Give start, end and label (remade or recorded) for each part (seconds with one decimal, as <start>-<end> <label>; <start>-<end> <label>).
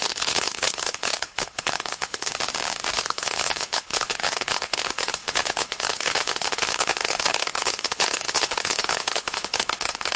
0.0-2.3 remade; 2.3-2.9 recorded; 2.9-10.2 remade